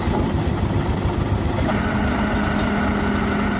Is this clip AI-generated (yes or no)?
no